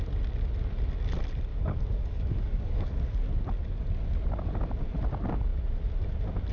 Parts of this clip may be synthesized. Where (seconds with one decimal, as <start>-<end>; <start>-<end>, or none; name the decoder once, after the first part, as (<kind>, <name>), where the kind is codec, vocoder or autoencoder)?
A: 1.5-3.2 (codec, DAC)